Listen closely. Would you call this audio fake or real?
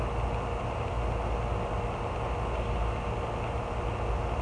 real